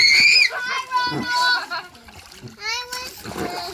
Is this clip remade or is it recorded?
recorded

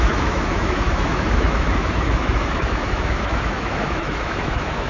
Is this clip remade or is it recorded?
remade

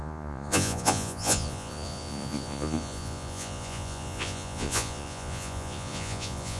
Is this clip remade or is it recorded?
remade